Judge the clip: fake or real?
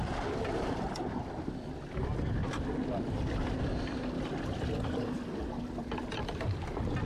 real